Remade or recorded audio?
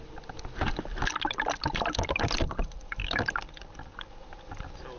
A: recorded